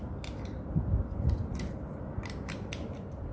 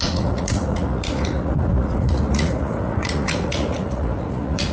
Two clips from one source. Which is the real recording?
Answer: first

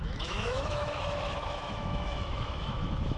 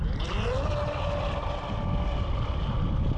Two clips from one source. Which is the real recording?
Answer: second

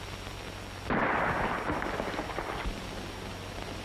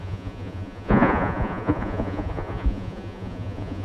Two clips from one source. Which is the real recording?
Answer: first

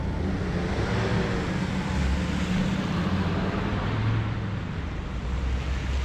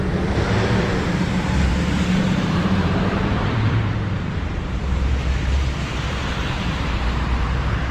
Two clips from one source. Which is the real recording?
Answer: first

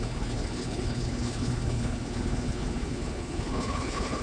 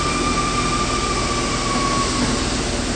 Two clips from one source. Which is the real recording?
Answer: second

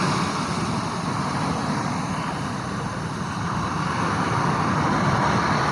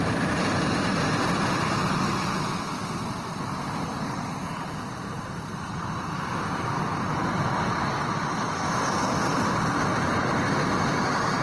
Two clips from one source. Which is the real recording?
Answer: second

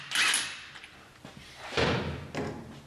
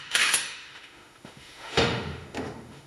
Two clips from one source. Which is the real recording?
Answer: first